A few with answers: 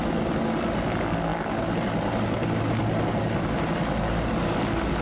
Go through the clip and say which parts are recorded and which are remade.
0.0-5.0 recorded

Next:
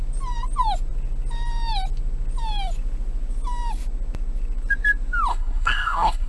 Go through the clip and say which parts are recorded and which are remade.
0.0-5.3 recorded; 5.3-6.3 remade